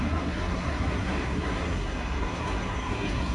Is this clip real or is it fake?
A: fake